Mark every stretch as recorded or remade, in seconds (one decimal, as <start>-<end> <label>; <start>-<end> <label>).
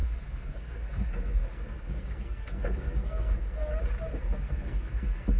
0.0-3.7 remade; 3.7-4.2 recorded; 4.2-5.4 remade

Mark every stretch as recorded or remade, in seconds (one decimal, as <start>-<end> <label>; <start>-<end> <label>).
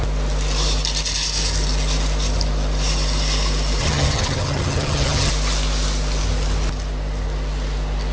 0.0-3.8 recorded; 3.8-5.3 remade; 5.3-8.1 recorded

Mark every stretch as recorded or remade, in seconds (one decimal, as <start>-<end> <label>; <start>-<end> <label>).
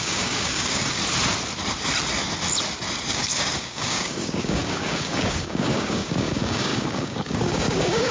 0.0-1.0 remade; 1.0-3.1 recorded; 3.1-8.1 remade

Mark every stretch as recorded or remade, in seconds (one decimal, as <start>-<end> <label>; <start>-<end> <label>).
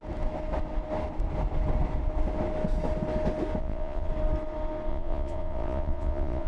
0.0-3.6 recorded; 3.6-4.1 remade; 4.1-4.9 recorded; 4.9-6.5 remade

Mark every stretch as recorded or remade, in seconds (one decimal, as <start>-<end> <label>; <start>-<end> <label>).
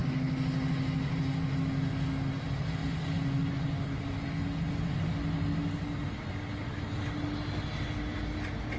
0.0-8.8 recorded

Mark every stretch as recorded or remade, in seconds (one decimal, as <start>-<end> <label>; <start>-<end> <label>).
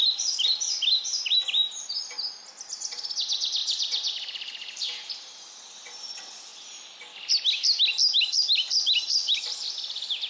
0.0-6.5 remade; 6.5-8.2 recorded; 8.2-10.3 remade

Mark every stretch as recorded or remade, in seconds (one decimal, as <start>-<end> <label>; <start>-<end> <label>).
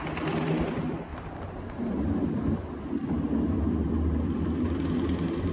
0.0-5.5 recorded